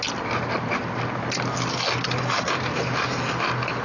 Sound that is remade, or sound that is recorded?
recorded